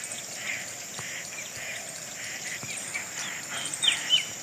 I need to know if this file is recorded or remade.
remade